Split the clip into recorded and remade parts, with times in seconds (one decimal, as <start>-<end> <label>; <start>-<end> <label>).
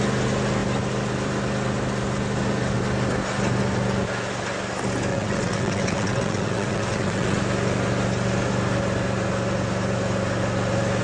0.0-5.1 recorded; 5.1-7.4 remade; 7.4-11.0 recorded